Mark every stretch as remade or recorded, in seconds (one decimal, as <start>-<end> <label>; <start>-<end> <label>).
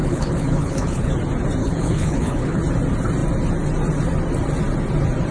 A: 0.0-1.1 remade; 1.1-1.6 recorded; 1.6-2.6 remade; 2.6-5.3 recorded